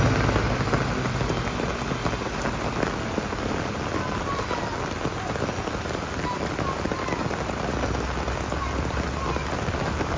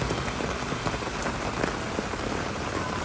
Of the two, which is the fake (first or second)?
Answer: second